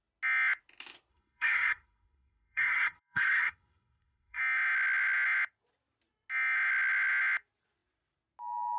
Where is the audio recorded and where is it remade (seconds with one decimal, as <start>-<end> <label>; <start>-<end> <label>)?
0.0-1.1 recorded; 1.1-4.4 remade; 4.4-8.8 recorded